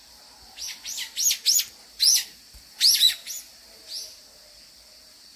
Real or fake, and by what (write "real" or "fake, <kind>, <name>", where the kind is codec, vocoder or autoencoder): real